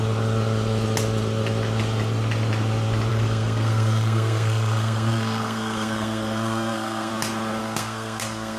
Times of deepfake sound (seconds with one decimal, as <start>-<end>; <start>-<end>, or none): 3.1-7.1; 7.6-8.6